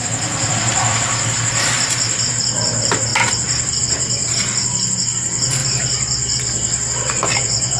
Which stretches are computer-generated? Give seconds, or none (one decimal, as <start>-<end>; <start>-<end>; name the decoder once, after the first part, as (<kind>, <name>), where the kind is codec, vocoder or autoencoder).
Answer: none